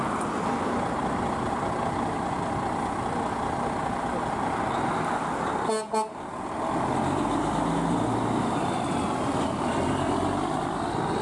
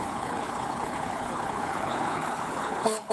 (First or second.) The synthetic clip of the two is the second